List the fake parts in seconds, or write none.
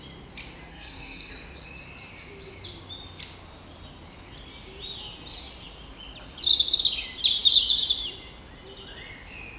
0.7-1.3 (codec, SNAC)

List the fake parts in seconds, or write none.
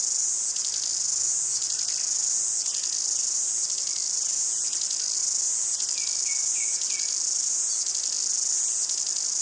none